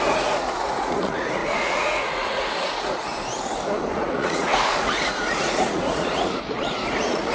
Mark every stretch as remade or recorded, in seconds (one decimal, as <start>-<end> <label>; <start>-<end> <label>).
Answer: 0.0-3.1 remade; 3.1-3.9 recorded; 3.9-7.3 remade